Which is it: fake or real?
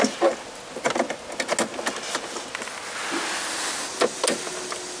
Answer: real